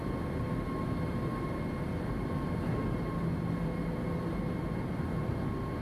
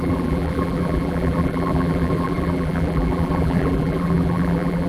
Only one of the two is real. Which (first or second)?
first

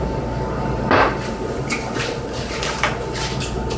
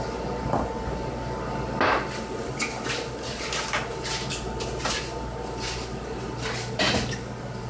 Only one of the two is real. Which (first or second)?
second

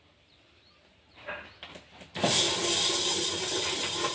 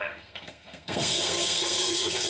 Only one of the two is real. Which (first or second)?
first